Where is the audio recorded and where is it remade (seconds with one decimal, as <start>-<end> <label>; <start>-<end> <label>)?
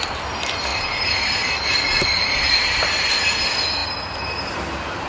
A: 0.0-0.7 recorded; 0.7-3.1 remade; 3.1-5.1 recorded